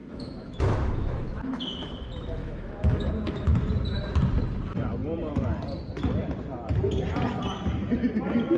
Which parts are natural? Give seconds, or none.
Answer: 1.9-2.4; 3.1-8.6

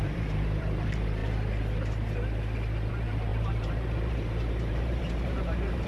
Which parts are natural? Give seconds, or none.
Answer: 1.2-2.9

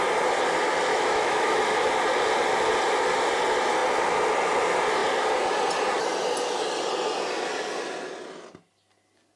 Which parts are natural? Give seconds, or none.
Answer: 0.0-0.9; 1.9-9.4

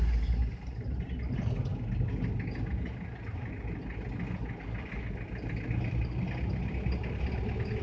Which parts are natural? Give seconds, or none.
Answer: 0.0-7.8